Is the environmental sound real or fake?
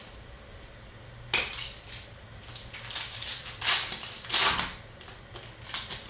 real